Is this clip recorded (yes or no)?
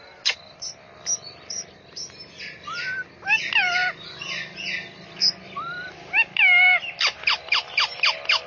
yes